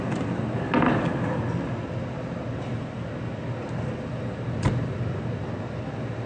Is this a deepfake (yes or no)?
no